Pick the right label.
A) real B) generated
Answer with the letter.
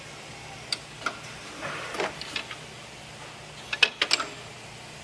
A